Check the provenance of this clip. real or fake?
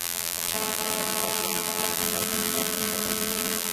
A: fake